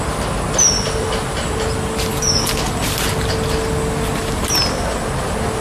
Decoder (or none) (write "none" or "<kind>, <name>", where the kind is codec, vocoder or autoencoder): none